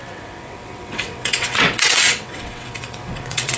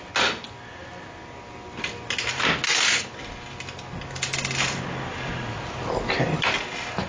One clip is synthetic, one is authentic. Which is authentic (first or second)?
second